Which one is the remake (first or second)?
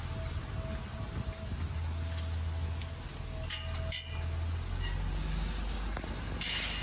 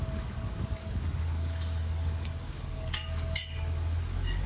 second